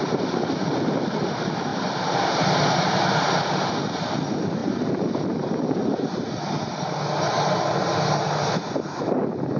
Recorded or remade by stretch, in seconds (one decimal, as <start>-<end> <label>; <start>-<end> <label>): 0.0-9.6 recorded